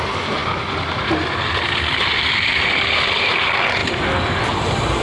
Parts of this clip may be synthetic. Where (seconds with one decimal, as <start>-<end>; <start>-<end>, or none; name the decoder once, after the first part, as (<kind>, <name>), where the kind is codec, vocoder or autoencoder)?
none